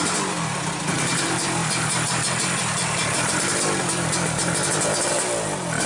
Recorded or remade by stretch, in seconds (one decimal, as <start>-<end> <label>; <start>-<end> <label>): 0.0-5.9 recorded